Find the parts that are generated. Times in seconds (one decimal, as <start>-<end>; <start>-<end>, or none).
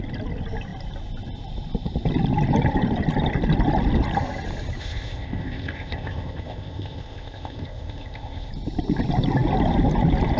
4.8-8.5